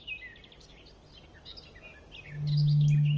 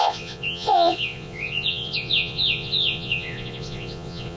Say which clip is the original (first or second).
first